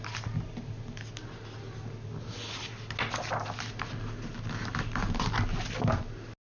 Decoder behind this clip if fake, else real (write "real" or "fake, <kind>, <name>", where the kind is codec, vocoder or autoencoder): real